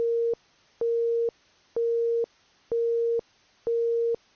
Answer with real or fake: real